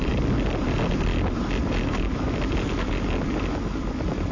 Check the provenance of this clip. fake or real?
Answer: real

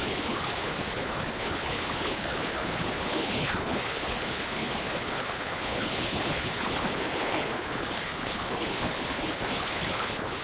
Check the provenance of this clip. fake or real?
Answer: fake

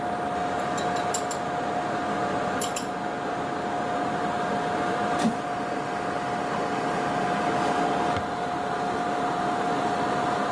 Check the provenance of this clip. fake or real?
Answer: real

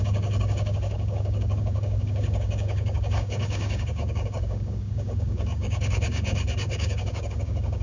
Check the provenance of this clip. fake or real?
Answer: fake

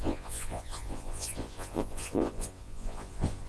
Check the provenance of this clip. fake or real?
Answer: fake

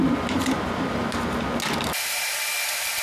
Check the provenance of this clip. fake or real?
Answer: real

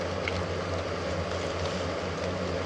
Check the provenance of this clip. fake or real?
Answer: real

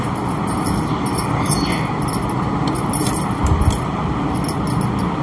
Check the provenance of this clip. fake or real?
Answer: real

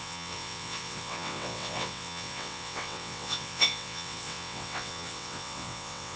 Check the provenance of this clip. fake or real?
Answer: fake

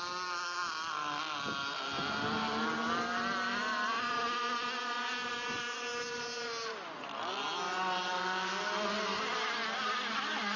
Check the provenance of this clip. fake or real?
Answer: real